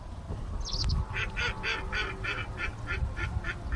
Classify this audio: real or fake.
real